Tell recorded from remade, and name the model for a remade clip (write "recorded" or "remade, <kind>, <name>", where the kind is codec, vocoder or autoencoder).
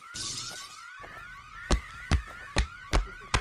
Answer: recorded